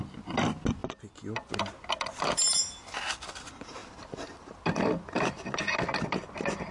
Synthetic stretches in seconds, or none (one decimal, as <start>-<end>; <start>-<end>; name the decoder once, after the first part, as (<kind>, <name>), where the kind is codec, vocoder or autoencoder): none